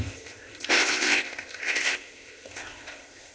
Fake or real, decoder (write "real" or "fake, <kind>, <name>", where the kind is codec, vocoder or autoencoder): fake, codec, ZipCodec